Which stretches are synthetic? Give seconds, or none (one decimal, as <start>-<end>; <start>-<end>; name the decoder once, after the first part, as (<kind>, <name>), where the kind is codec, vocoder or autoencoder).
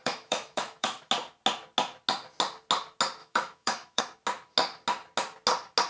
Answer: 0.0-1.1 (autoencoder, DAC-VAE); 3.2-4.0